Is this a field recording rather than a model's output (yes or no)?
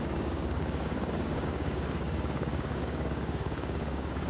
no